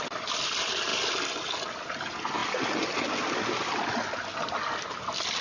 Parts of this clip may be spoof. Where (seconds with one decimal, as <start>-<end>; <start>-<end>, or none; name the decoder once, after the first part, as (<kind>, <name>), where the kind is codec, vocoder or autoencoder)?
none

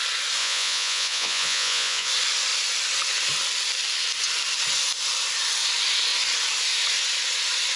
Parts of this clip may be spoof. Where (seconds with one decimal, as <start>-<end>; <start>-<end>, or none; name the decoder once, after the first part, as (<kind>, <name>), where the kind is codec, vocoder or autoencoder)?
0.4-2.1 (vocoder, Vocos)

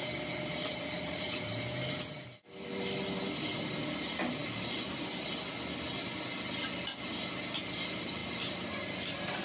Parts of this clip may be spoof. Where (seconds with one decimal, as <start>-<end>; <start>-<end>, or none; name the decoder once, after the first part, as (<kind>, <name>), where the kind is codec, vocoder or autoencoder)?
none

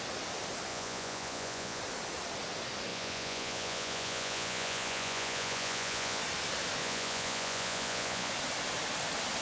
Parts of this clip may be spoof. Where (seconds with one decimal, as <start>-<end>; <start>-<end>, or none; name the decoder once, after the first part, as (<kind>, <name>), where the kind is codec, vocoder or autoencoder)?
0.7-1.8 (vocoder, Vocos); 2.9-6.2; 6.8-8.3

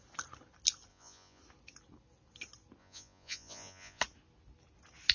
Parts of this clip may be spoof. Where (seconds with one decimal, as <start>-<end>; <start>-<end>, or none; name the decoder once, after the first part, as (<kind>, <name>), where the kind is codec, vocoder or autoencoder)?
0.9-1.4 (vocoder, Vocos); 2.8-4.0